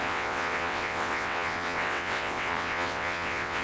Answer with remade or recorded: remade